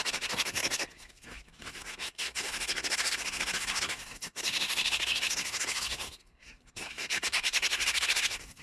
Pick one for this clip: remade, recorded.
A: remade